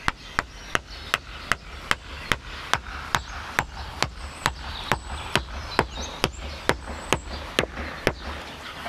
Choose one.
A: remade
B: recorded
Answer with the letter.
B